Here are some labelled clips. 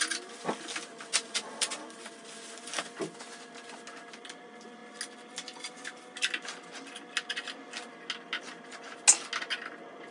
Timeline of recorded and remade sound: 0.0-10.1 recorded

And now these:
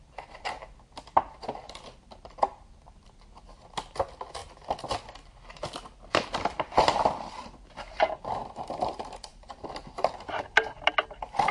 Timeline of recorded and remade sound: 0.0-4.4 remade; 4.4-6.1 recorded; 6.1-11.5 remade

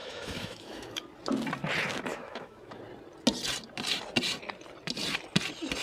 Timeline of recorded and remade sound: 0.0-1.0 remade; 1.0-2.1 recorded; 2.1-2.8 remade; 2.8-5.8 recorded

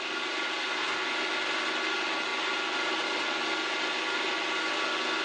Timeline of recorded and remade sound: 0.0-5.2 recorded

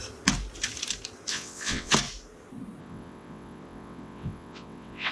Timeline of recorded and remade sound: 0.0-1.3 recorded; 1.3-1.9 remade; 1.9-2.8 recorded; 2.8-5.1 remade